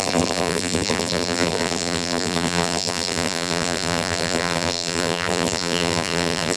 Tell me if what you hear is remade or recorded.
remade